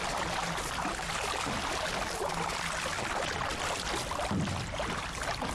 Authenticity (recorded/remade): recorded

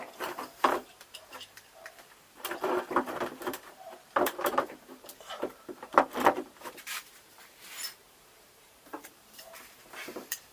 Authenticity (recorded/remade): remade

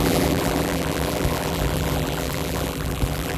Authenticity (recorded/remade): remade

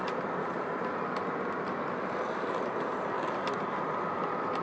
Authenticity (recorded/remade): recorded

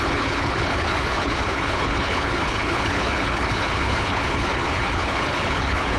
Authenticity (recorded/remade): remade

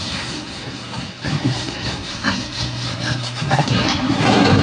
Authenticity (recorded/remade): remade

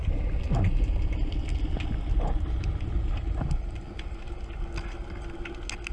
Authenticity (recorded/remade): recorded